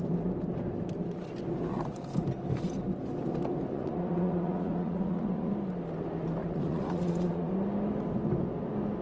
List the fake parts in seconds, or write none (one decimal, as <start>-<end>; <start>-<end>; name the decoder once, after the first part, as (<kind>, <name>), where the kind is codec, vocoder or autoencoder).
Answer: 3.7-5.5 (vocoder, Vocos); 6.4-7.5